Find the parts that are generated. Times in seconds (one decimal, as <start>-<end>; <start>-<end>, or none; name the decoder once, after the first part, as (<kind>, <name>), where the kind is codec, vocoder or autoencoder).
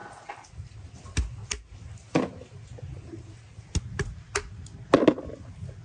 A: none